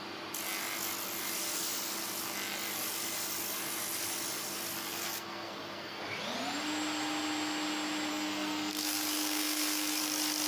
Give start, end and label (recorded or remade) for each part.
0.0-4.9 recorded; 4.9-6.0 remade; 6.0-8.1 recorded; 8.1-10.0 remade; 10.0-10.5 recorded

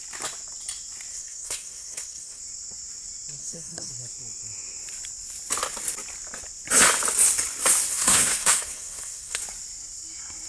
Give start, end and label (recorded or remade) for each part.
0.0-1.1 recorded; 1.1-2.4 remade; 2.4-3.4 recorded; 3.4-3.9 remade; 3.9-7.9 recorded; 7.9-9.4 remade; 9.4-10.5 recorded

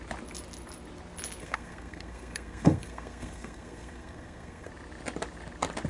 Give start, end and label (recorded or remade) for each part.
0.0-1.4 recorded; 1.4-4.7 remade; 4.7-5.9 recorded

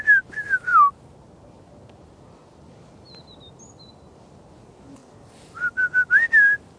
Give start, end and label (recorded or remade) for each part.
0.0-6.8 recorded

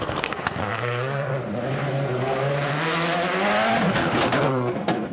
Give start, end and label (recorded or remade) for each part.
0.0-1.3 remade; 1.3-4.4 recorded; 4.4-5.1 remade

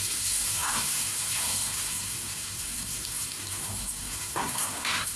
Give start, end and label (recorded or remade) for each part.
0.0-5.2 remade

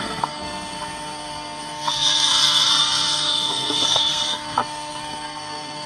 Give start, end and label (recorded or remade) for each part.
0.0-5.9 remade